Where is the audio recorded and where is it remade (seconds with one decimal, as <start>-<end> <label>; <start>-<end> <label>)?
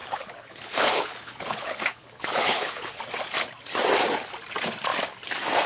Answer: 0.0-3.0 remade; 3.0-5.7 recorded